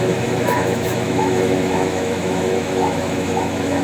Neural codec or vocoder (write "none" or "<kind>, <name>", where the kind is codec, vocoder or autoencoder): autoencoder, DAC-VAE